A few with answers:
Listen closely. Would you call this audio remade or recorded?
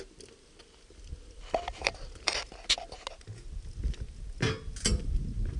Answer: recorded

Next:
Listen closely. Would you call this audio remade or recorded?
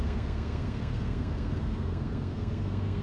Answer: remade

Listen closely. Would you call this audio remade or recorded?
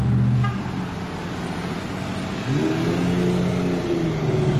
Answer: recorded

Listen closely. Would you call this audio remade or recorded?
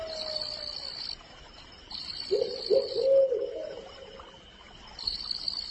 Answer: recorded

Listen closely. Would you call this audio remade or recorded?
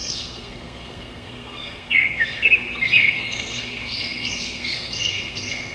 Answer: remade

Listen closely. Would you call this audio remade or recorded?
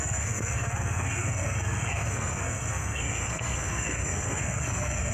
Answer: remade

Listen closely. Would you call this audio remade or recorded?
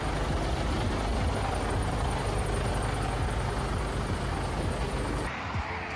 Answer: recorded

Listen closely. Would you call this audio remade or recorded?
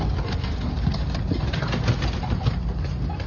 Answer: recorded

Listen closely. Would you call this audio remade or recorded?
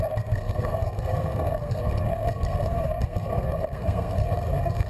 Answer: remade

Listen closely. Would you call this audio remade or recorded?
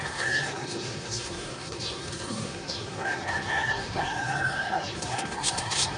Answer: remade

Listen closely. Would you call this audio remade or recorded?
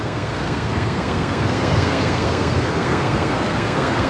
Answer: remade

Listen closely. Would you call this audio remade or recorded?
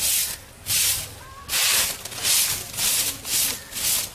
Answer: recorded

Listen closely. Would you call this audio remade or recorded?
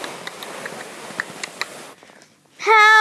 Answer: recorded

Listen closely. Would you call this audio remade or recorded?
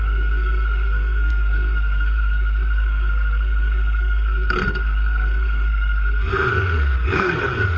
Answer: remade